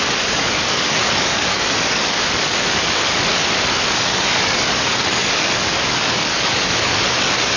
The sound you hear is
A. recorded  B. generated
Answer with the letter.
B